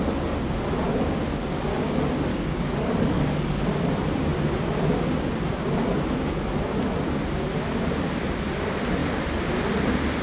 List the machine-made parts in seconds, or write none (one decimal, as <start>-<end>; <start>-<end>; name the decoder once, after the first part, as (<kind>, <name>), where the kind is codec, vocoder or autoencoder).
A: 2.3-3.6 (codec, DAC)